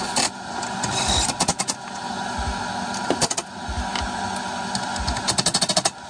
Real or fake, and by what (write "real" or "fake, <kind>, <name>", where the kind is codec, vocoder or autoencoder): real